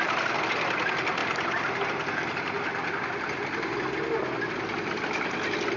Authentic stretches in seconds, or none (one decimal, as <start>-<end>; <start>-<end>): 0.0-5.8